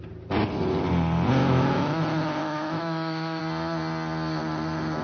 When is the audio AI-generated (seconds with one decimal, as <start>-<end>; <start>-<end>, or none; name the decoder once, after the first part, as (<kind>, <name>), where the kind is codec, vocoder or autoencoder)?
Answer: 1.4-1.9 (autoencoder, DAC-VAE); 2.4-3.4